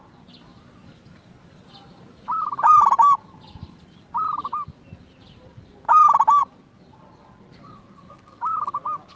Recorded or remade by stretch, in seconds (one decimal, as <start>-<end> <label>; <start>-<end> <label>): 0.0-9.2 recorded